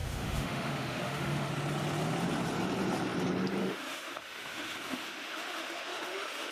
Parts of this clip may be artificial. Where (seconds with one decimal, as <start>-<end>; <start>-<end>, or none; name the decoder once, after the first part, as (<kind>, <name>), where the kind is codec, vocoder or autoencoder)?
0.0-1.5 (autoencoder, DAC-VAE); 3.6-6.5